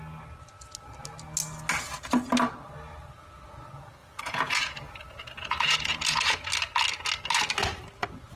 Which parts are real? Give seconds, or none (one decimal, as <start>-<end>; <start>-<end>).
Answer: 0.0-4.0; 6.5-8.4